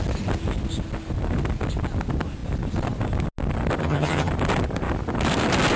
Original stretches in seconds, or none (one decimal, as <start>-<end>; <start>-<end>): 0.0-3.8; 4.3-5.8